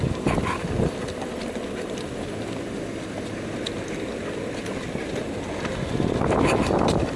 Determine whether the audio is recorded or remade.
recorded